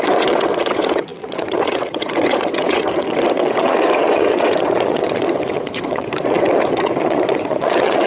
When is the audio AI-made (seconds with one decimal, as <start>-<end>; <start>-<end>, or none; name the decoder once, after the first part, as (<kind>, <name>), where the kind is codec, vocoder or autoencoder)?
0.0-8.1 (vocoder, WaveNeXt)